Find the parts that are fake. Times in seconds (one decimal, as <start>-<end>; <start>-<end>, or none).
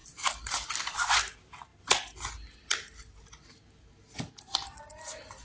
none